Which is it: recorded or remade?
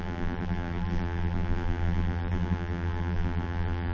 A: remade